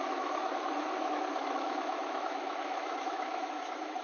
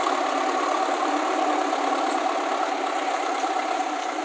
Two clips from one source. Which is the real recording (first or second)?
second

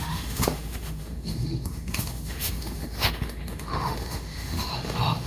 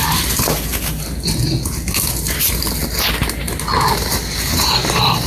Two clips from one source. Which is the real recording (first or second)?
second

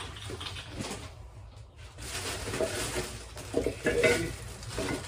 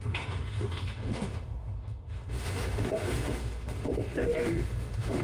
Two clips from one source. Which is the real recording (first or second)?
first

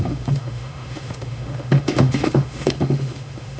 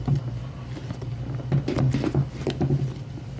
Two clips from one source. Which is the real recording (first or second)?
second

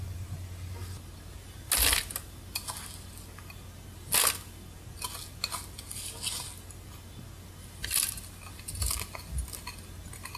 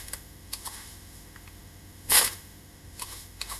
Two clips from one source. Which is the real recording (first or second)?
first